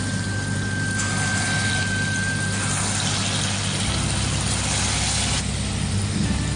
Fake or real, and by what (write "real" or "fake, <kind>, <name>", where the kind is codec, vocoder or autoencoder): real